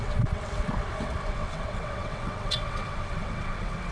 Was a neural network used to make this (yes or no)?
yes